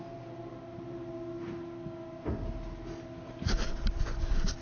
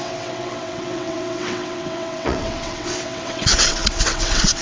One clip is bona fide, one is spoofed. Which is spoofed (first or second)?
second